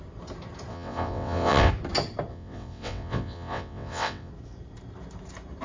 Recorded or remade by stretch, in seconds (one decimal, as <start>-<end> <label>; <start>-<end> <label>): 0.0-0.7 recorded; 0.7-1.7 remade; 1.7-2.3 recorded; 2.3-4.3 remade; 4.3-5.6 recorded